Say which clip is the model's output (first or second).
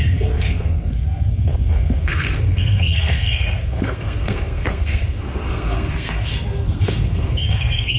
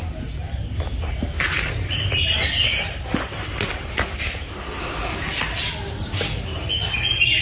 first